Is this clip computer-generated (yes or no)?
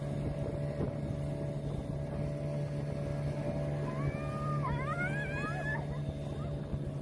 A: no